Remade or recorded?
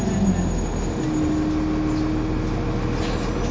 recorded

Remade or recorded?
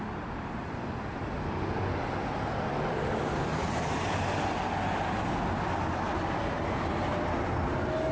recorded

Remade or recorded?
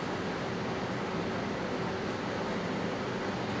recorded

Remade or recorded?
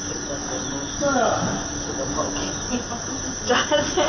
recorded